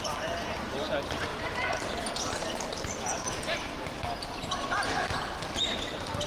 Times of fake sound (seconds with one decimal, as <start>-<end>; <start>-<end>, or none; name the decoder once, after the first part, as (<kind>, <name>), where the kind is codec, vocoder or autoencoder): 1.3-2.1 (vocoder, BigVGAN v2); 2.7-4.6